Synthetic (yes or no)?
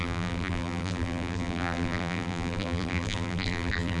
yes